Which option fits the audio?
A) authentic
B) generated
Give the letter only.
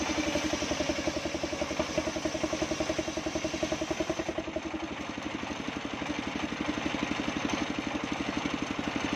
A